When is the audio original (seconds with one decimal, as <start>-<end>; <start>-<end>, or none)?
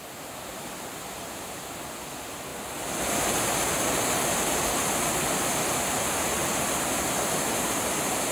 0.0-6.4